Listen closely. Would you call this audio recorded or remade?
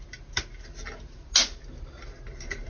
recorded